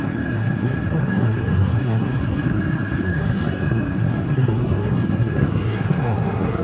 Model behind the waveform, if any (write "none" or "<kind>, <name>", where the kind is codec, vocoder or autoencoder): codec, SNAC